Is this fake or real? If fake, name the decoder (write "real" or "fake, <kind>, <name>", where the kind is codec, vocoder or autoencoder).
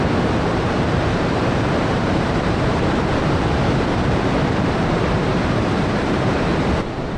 fake, vocoder, BigVGAN v2